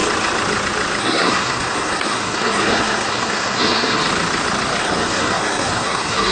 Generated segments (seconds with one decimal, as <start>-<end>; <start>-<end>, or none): 1.0-4.0; 4.8-6.3